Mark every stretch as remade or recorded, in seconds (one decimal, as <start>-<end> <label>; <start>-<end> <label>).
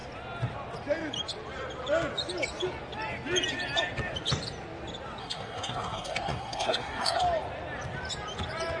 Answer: 0.0-5.2 recorded; 5.2-7.2 remade; 7.2-8.8 recorded